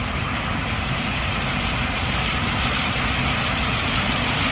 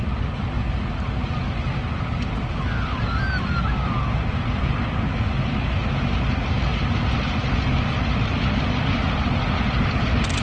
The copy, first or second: first